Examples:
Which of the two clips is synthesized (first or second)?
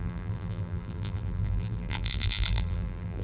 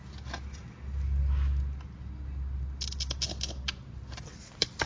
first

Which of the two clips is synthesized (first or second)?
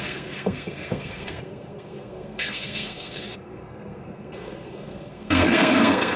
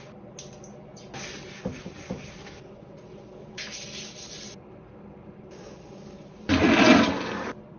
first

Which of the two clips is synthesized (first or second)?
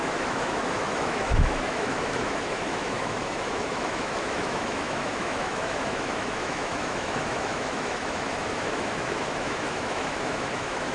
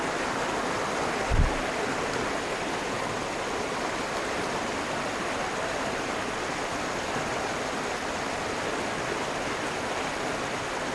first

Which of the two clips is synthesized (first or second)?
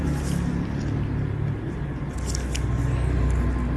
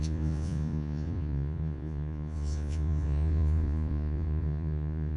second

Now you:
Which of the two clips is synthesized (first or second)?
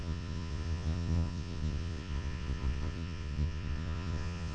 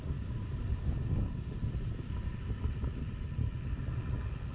first